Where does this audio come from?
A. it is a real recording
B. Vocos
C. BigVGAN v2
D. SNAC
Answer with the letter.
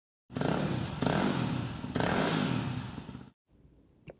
A